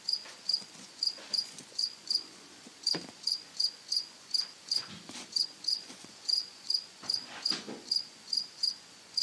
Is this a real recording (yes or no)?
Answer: no